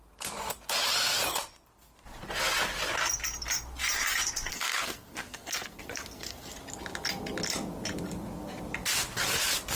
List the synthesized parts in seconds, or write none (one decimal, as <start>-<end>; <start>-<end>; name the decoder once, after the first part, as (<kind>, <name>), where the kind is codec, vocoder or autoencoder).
4.5-6.5 (codec, SNAC)

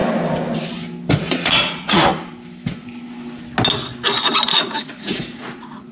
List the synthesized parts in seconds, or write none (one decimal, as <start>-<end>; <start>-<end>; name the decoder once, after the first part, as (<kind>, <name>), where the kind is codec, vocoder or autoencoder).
1.1-2.1 (vocoder, Vocos); 4.7-5.9

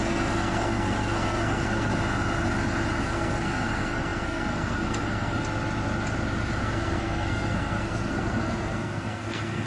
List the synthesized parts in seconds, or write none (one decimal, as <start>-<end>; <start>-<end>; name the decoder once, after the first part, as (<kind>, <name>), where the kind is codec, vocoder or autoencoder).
0.0-1.9 (codec, SNAC); 3.0-5.4; 6.6-9.7